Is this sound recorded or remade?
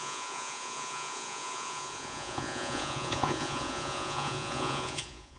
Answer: remade